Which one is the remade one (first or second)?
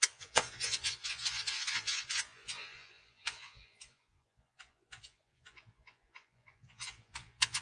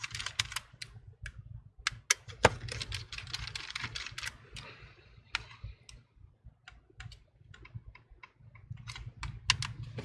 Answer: first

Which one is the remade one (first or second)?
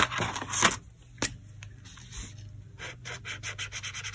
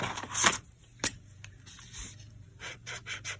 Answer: second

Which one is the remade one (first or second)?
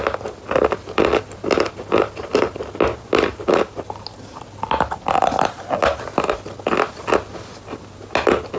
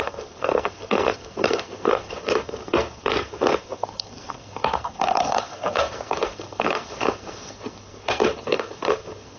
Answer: second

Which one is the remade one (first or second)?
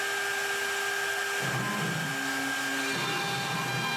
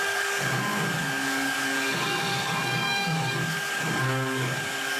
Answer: second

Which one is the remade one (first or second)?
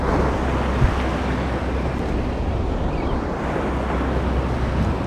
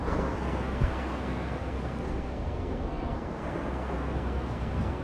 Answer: second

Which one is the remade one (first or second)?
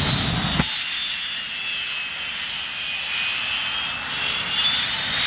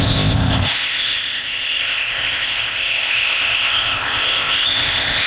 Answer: second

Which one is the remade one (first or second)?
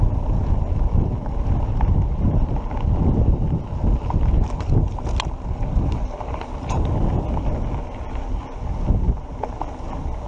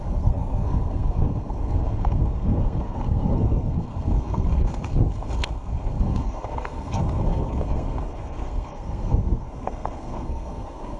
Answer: second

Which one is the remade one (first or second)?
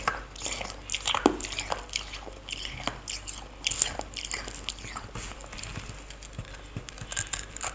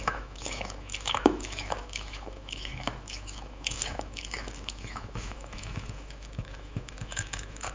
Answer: second